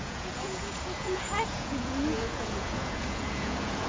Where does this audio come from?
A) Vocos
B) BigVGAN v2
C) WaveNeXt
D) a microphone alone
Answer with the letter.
A